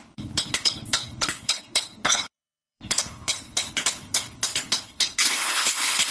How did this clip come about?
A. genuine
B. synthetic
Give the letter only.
B